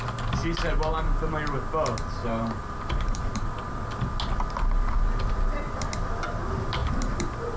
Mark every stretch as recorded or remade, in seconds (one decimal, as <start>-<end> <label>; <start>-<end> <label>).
0.0-2.2 recorded; 2.2-3.5 remade; 3.5-6.8 recorded; 6.8-7.6 remade